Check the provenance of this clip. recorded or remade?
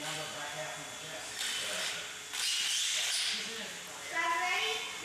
recorded